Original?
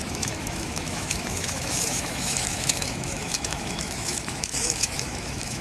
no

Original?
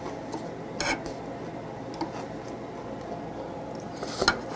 yes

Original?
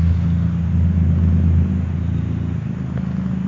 yes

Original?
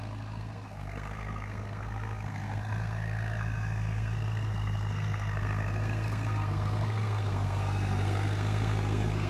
no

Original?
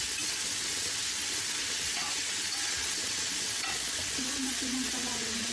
no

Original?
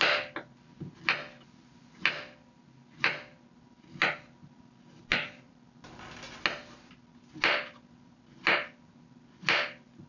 yes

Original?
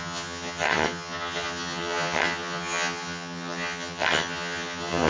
no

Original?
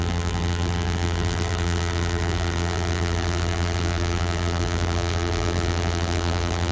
no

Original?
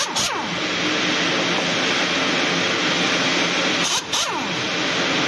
yes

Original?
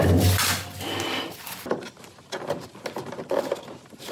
yes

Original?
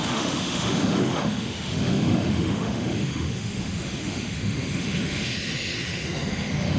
no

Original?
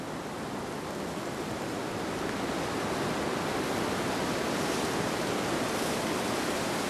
yes